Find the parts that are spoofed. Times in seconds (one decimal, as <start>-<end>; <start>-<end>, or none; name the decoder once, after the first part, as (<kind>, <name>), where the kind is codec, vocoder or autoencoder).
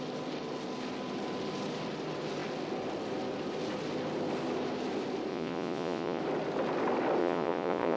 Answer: 5.3-6.2 (vocoder, Vocos); 7.2-8.0